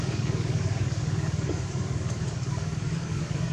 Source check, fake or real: fake